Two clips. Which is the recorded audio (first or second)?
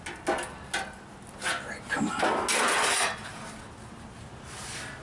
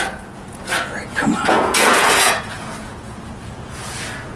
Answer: first